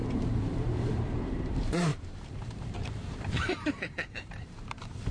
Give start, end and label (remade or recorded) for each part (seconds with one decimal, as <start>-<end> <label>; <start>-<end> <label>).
0.0-5.1 remade